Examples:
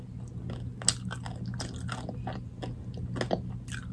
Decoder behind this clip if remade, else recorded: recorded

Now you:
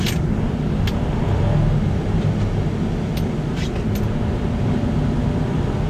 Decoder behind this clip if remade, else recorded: recorded